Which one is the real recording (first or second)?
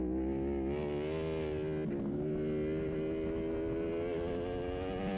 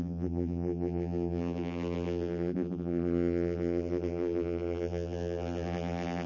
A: first